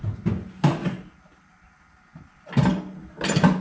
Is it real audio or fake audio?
real